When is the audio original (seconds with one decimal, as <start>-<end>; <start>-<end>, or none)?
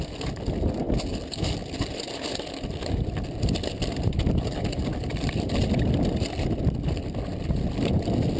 0.0-1.6; 6.6-8.4